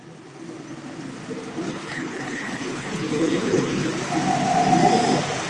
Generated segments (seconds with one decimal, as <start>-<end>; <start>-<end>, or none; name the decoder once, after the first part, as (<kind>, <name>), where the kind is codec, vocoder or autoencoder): 1.7-3.9 (codec, HILCodec)